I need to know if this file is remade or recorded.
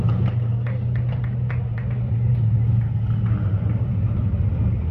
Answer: recorded